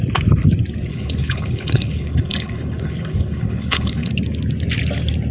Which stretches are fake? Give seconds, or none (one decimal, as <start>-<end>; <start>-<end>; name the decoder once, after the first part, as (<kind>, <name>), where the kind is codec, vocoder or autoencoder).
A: 0.9-4.1 (codec, HILCodec)

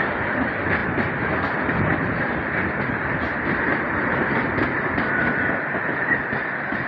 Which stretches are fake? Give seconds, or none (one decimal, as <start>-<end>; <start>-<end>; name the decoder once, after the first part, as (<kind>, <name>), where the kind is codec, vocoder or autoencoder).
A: 0.8-2.3 (vocoder, BigVGAN v2); 4.2-5.1

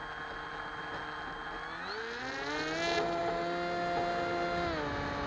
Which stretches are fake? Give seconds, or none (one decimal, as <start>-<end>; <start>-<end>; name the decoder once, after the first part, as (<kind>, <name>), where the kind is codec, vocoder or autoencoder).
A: none

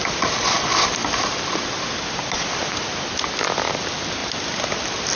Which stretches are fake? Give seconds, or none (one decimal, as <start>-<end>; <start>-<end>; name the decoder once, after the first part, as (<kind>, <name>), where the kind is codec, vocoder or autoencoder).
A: none

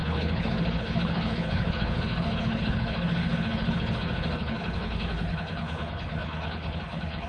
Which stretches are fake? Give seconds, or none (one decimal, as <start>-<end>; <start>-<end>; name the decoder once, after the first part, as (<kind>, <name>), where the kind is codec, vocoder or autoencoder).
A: 0.0-7.3 (codec, HILCodec)

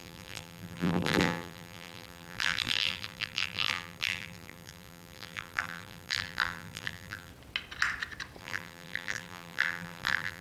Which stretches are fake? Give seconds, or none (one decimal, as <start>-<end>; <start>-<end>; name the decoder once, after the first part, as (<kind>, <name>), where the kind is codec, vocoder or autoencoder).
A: 0.0-7.3 (vocoder, BigVGAN v2); 8.4-10.4